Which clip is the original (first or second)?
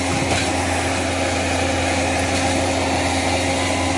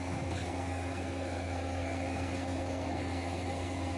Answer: first